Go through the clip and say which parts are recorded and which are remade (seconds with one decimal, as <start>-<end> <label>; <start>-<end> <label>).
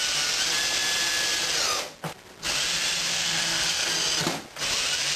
0.0-3.1 recorded; 3.1-3.9 remade; 3.9-5.2 recorded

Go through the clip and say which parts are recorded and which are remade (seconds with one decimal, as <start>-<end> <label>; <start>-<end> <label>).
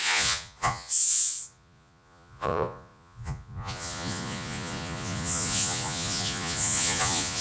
0.0-7.4 remade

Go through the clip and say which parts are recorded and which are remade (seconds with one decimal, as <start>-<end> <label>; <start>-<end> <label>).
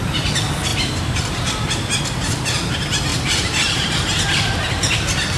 0.0-0.7 recorded; 0.7-2.0 remade; 2.0-3.1 recorded; 3.1-3.9 remade; 3.9-5.4 recorded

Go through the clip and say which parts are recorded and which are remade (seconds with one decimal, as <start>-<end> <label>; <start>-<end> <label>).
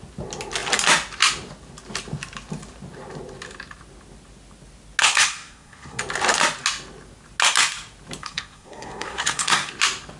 0.0-5.0 recorded; 5.0-6.0 remade; 6.0-8.2 recorded; 8.2-9.7 remade; 9.7-10.2 recorded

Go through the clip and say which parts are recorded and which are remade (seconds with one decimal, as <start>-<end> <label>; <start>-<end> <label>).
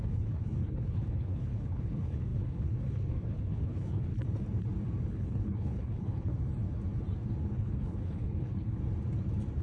0.0-4.1 remade; 4.1-5.1 recorded; 5.1-6.3 remade; 6.3-7.5 recorded; 7.5-8.8 remade; 8.8-9.6 recorded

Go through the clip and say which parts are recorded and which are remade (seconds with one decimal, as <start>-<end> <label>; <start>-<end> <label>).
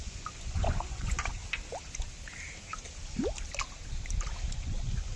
0.0-1.4 remade; 1.4-4.5 recorded; 4.5-5.2 remade